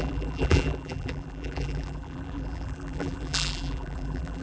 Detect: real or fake fake